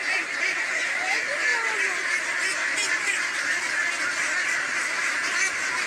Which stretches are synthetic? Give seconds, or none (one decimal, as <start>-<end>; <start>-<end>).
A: none